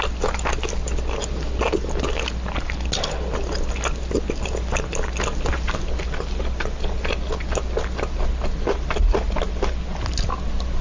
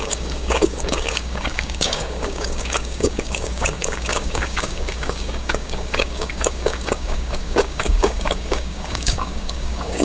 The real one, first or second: first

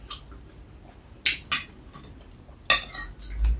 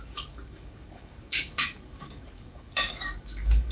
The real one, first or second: first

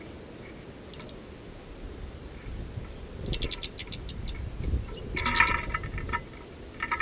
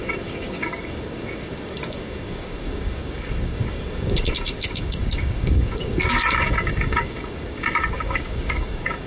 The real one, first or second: first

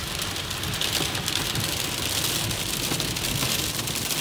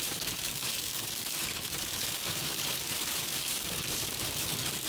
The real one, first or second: first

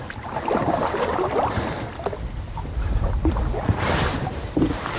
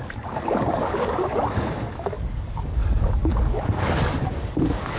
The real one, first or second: first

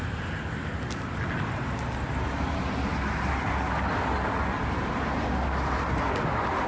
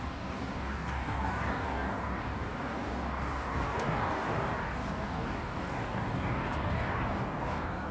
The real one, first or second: first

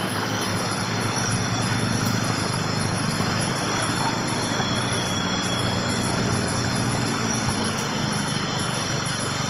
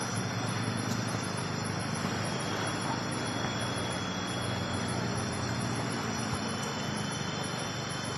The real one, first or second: second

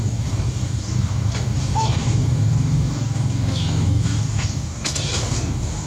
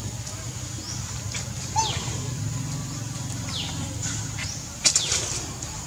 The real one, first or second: second